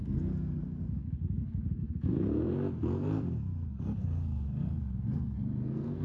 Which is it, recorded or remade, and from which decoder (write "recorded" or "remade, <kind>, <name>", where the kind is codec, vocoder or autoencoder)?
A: remade, codec, SNAC